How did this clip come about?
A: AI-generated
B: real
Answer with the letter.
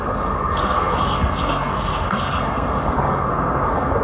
A